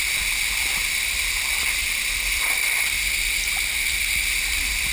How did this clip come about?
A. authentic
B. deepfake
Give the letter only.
A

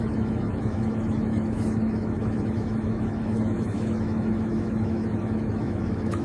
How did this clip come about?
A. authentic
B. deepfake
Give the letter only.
B